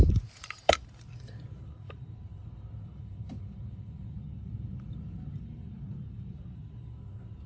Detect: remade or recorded remade